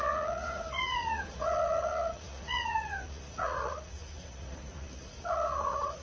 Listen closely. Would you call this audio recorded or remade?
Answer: remade